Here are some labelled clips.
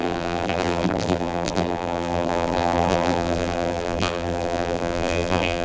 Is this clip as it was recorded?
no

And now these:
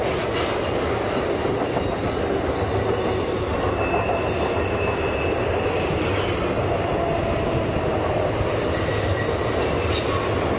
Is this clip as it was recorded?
yes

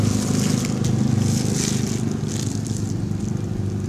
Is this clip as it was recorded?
yes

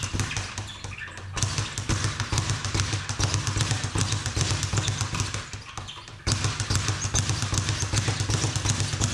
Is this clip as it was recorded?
yes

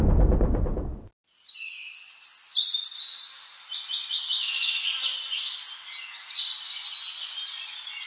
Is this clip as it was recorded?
yes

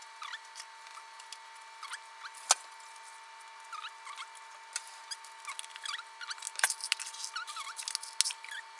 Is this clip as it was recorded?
yes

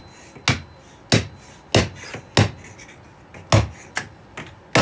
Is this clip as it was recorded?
yes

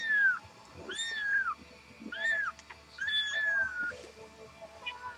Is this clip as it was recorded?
yes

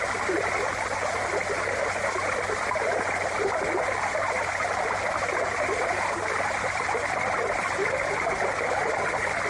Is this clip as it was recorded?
yes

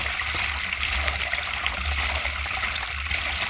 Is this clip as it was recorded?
yes